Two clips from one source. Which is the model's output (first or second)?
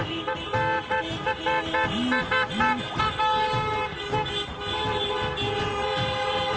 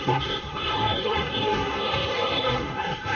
second